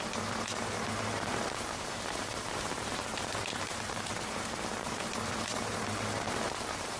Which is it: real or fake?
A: fake